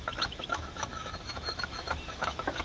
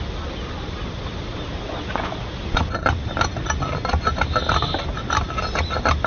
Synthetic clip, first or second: first